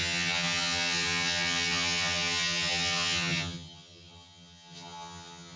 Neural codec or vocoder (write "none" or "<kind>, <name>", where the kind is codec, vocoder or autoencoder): vocoder, HiFi-GAN